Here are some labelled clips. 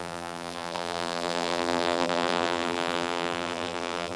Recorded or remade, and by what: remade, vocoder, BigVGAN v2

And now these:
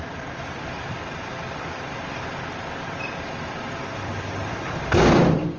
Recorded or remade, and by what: remade, vocoder, BigVGAN v2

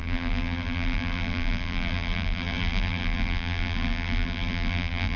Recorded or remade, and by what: remade, vocoder, BigVGAN v2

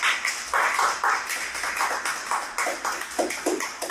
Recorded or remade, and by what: recorded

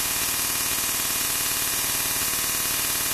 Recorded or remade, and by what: recorded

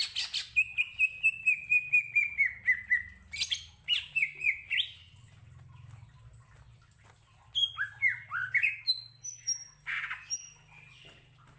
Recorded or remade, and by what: recorded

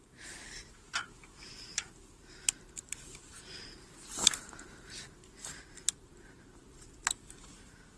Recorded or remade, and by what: remade, vocoder, BigVGAN v2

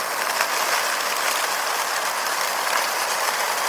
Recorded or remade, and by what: remade, vocoder, BigVGAN v2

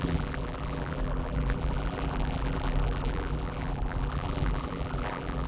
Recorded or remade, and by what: remade, vocoder, BigVGAN v2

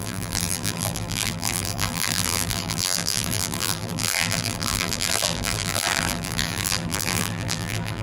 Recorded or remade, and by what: remade, vocoder, BigVGAN v2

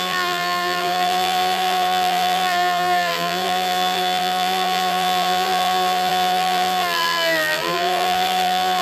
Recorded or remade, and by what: remade, vocoder, BigVGAN v2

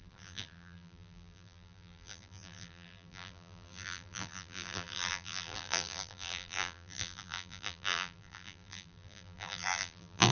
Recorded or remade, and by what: remade, vocoder, BigVGAN v2